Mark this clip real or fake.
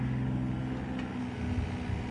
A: real